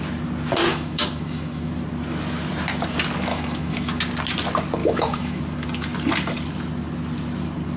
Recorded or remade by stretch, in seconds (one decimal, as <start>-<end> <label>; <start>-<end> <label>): 0.0-0.7 recorded; 0.7-1.7 remade; 1.7-3.3 recorded; 3.3-4.0 remade; 4.0-4.8 recorded; 4.8-5.4 remade; 5.4-7.8 recorded